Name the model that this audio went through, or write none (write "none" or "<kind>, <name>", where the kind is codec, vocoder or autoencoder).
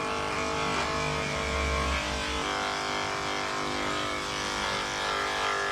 none